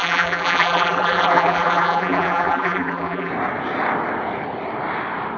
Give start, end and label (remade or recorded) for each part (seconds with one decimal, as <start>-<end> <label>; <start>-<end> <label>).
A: 0.0-3.3 remade; 3.3-5.4 recorded

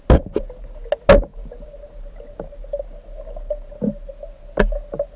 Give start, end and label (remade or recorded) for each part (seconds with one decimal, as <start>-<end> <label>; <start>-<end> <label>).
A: 0.0-5.2 recorded